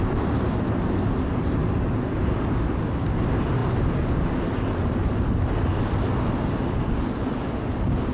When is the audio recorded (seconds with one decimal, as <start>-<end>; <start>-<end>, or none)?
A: 0.0-8.1